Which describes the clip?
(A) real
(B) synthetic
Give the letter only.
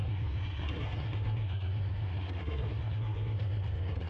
B